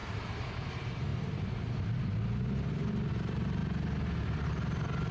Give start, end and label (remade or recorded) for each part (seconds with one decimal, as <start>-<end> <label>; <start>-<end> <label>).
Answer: 0.0-1.1 remade; 1.1-3.1 recorded; 3.1-3.6 remade; 3.6-5.1 recorded